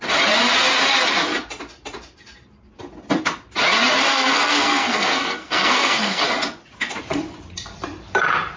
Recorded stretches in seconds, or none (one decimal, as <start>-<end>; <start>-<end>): 0.0-4.1; 6.2-8.6